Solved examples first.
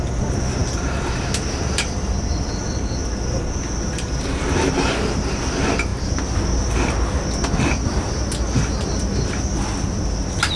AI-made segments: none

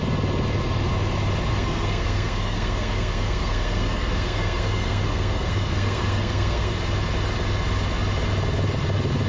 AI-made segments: 1.5-6.7 (codec, SNAC)

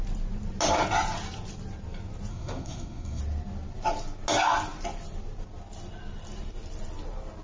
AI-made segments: 2.3-3.2 (codec, SNAC)

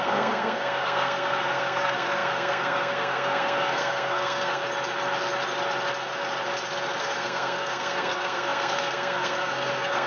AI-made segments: 0.0-4.6 (codec, SNAC); 7.0-10.1

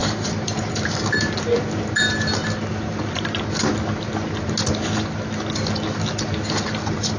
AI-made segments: none